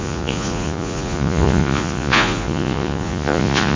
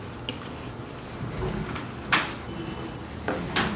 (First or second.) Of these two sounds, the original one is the second